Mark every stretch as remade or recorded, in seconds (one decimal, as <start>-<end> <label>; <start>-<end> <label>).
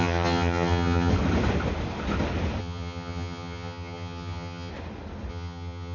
0.0-1.1 remade; 1.1-2.6 recorded; 2.6-4.7 remade; 4.7-5.3 recorded; 5.3-5.9 remade